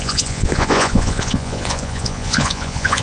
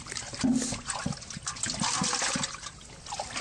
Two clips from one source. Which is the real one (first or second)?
second